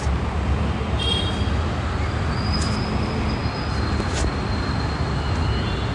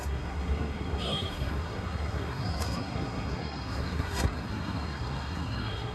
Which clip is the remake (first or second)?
second